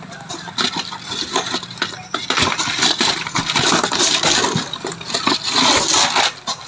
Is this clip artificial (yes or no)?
no